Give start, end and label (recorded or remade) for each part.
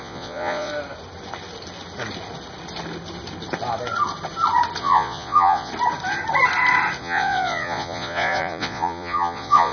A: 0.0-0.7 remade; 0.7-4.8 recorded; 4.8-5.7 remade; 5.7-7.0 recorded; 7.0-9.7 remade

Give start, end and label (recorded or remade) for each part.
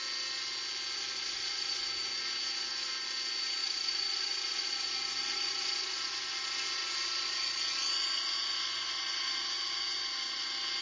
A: 0.0-1.0 recorded; 1.0-1.8 remade; 1.8-3.6 recorded; 3.6-6.3 remade; 6.3-10.8 recorded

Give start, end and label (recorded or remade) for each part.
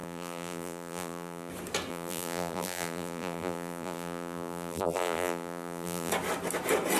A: 0.0-1.5 remade; 1.5-1.9 recorded; 1.9-6.1 remade; 6.1-7.0 recorded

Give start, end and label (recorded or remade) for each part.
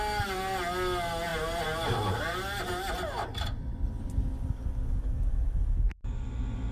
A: 0.0-6.7 recorded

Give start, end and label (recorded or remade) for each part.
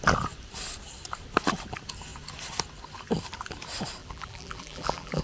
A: 0.0-4.0 recorded; 4.0-5.2 remade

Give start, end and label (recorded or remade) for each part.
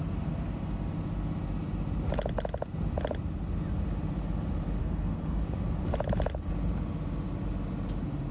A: 0.0-4.8 recorded; 4.8-5.4 remade; 5.4-8.3 recorded